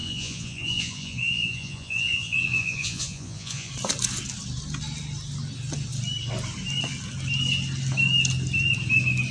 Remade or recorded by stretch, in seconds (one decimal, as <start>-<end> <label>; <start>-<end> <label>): 0.0-3.7 remade; 3.7-9.3 recorded